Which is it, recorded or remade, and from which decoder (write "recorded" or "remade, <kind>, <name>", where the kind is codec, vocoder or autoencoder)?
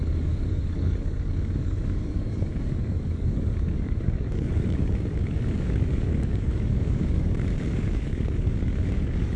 remade, codec, DAC